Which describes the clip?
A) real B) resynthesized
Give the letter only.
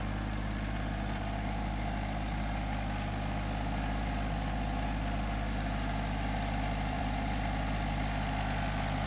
B